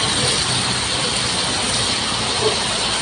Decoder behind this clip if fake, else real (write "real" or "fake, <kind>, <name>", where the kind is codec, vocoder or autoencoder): real